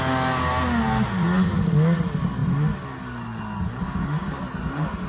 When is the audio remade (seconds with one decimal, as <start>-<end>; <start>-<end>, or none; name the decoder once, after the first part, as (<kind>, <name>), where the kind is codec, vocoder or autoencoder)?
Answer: none